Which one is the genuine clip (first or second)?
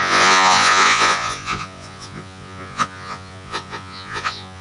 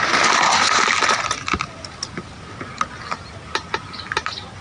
second